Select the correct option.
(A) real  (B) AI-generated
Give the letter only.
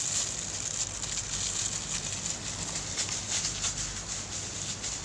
A